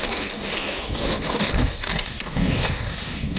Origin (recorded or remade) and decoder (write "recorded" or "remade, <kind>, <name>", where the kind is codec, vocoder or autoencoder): remade, codec, DAC